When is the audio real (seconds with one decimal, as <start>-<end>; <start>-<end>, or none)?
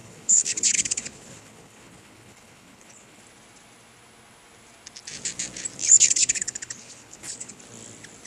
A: 3.2-5.8; 7.6-8.3